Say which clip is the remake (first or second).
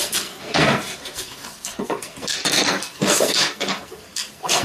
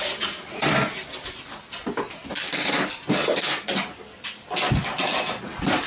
first